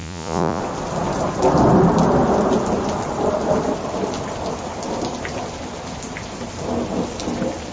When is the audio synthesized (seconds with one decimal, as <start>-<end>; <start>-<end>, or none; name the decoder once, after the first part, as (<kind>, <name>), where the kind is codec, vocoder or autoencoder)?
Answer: 0.0-0.6 (vocoder, Vocos)